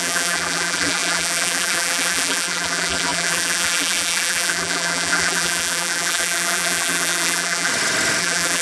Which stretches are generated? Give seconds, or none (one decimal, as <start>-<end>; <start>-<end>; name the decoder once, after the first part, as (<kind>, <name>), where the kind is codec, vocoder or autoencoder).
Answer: 0.0-7.7 (vocoder, BigVGAN v2); 8.2-8.6